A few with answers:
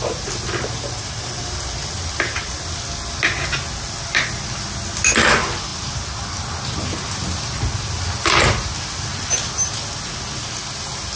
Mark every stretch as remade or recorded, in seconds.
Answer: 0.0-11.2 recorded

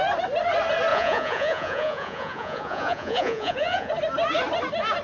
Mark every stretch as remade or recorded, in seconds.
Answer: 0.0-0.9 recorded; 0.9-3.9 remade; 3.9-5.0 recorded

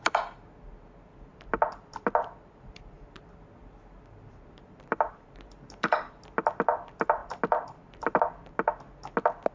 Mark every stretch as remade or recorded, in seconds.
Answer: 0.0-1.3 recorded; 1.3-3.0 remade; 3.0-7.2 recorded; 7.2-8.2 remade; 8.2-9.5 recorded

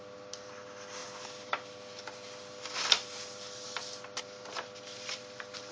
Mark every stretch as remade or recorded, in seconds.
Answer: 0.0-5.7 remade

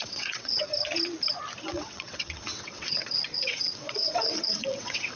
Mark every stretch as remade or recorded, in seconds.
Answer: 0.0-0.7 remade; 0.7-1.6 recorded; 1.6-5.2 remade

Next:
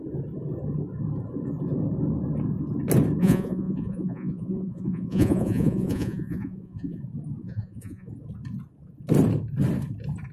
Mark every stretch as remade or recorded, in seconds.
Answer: 0.0-3.2 recorded; 3.2-7.0 remade; 7.0-7.4 recorded; 7.4-8.1 remade; 8.1-10.3 recorded

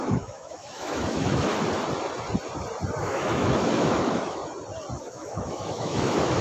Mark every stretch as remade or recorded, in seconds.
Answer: 0.0-1.5 remade; 1.5-3.0 recorded; 3.0-4.4 remade; 4.4-5.0 recorded; 5.0-6.4 remade

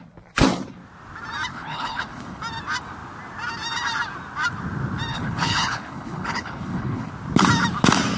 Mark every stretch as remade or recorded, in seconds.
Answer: 0.0-1.5 recorded; 1.5-2.4 remade; 2.4-5.1 recorded; 5.1-7.1 remade; 7.1-8.2 recorded